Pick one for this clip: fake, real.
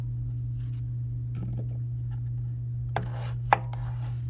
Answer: real